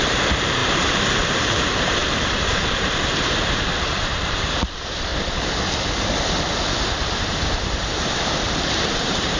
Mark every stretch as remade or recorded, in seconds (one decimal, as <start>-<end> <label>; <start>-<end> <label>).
0.0-5.1 remade; 5.1-8.0 recorded; 8.0-9.4 remade